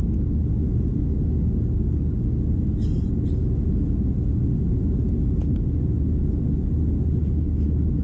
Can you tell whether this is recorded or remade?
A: recorded